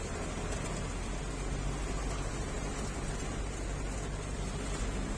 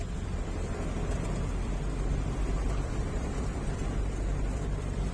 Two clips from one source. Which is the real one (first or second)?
first